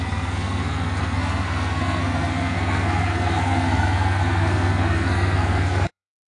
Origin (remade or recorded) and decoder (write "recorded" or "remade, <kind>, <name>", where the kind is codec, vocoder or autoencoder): remade, codec, SNAC